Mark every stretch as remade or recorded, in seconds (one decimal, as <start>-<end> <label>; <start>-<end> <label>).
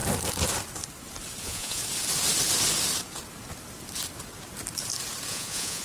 0.0-1.4 recorded; 1.4-1.8 remade; 1.8-5.3 recorded; 5.3-5.8 remade